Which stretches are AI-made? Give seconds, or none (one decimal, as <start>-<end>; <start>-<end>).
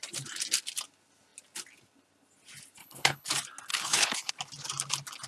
2.8-3.3; 3.7-4.3